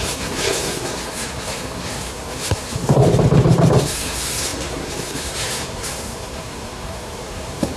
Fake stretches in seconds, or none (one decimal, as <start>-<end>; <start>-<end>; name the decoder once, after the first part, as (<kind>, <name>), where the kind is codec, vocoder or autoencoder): 0.0-3.0 (codec, SNAC); 3.8-7.8